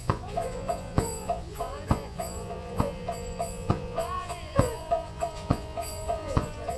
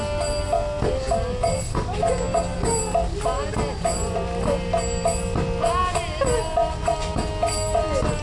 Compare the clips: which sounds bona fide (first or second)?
second